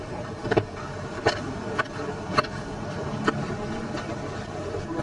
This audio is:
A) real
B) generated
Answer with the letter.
B